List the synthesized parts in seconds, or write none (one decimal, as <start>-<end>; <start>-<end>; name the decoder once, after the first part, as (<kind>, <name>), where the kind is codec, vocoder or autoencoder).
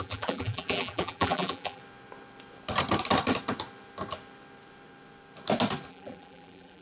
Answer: 0.0-1.8 (vocoder, BigVGAN v2); 5.9-6.8